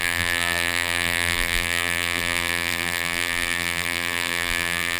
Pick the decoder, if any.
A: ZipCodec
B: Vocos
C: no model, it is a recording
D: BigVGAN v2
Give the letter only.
D